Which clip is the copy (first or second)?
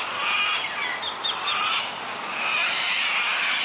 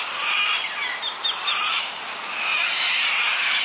second